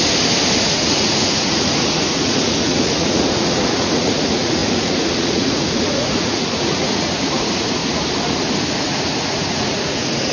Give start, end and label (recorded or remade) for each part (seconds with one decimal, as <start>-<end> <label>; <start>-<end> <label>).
0.0-0.6 recorded; 0.6-7.8 remade; 7.8-8.8 recorded; 8.8-10.3 remade